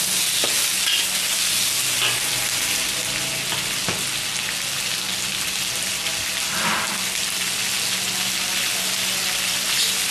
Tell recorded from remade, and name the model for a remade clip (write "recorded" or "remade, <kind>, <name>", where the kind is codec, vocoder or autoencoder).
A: recorded